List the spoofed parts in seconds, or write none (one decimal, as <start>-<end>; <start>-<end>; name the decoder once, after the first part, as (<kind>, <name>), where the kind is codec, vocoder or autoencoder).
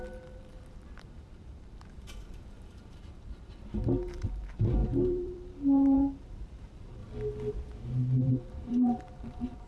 0.0-7.0 (vocoder, BigVGAN v2); 8.2-9.7